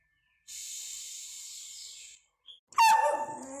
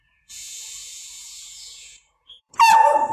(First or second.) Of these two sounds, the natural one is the first